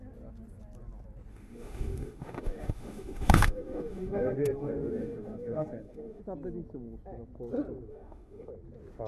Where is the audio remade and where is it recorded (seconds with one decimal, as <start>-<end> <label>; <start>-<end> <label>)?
0.0-1.3 recorded; 1.3-6.2 remade; 6.2-7.9 recorded; 7.9-8.5 remade; 8.5-9.1 recorded